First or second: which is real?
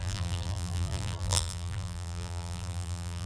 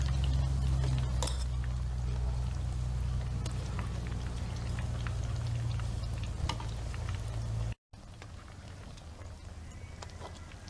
second